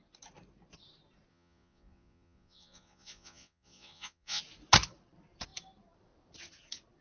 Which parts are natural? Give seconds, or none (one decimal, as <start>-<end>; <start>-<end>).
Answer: 0.0-1.3; 4.4-7.0